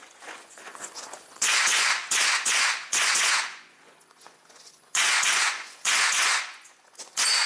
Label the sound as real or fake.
fake